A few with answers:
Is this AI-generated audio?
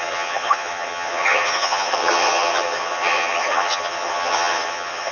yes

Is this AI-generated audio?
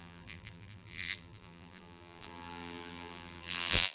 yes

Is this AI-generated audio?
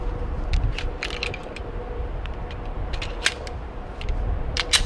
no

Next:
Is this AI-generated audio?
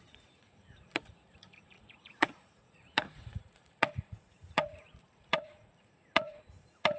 yes